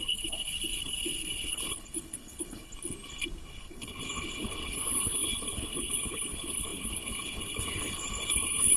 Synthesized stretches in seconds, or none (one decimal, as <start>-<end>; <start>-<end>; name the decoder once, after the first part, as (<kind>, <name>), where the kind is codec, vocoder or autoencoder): 0.0-2.7 (codec, HILCodec); 3.5-8.8